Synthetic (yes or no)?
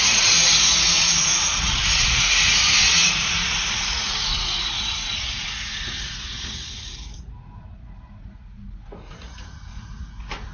yes